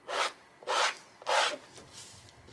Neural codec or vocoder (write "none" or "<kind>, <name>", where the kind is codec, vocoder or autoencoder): none